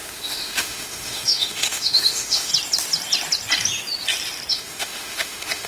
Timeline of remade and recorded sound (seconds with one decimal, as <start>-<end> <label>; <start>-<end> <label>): 0.0-2.5 remade; 2.5-4.5 recorded; 4.5-5.7 remade